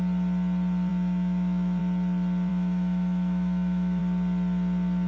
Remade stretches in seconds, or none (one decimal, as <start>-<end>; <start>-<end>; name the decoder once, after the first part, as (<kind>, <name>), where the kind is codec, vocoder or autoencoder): 0.9-1.8 (autoencoder, DAC-VAE); 2.5-4.0